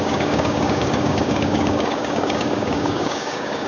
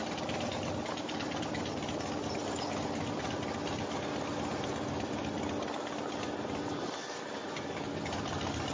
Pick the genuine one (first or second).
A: second